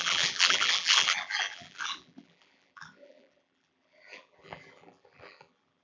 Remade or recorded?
remade